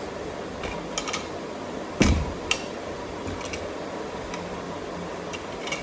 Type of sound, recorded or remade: recorded